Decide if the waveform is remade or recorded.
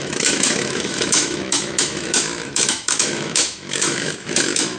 remade